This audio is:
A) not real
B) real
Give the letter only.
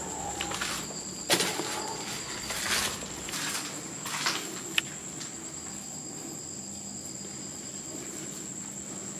B